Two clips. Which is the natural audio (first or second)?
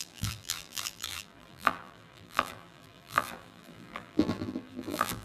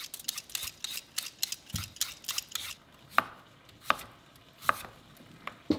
second